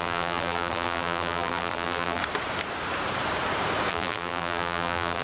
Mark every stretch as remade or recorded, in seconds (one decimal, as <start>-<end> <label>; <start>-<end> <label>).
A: 0.0-2.2 remade; 2.2-3.9 recorded; 3.9-5.2 remade

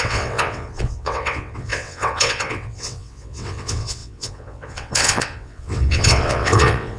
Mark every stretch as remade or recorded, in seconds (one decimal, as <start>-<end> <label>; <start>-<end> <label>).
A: 0.0-7.0 remade

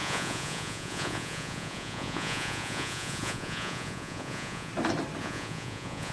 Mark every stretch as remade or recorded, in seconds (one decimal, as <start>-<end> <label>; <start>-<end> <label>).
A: 0.0-4.7 remade; 4.7-5.2 recorded; 5.2-6.1 remade

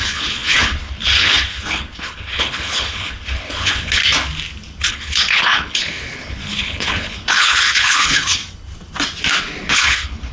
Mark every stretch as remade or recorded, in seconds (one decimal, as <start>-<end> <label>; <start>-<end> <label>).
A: 0.0-4.0 remade; 4.0-4.9 recorded; 4.9-8.4 remade; 8.4-9.6 recorded; 9.6-10.3 remade

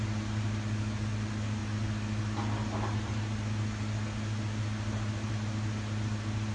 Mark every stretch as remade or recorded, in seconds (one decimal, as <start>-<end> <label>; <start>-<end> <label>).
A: 0.0-6.5 recorded

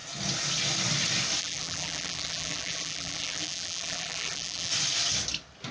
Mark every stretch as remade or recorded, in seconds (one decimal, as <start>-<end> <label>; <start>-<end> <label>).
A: 0.0-1.4 recorded; 1.4-4.7 remade; 4.7-5.7 recorded

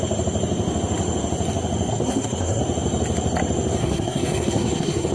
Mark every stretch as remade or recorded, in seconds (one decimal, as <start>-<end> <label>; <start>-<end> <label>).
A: 0.0-1.9 recorded; 1.9-2.6 remade; 2.6-3.8 recorded; 3.8-5.1 remade